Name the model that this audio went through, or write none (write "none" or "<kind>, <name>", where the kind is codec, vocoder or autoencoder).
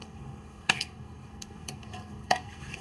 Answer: codec, SNAC